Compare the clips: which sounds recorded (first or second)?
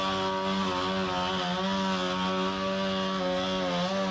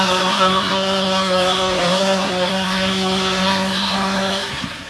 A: first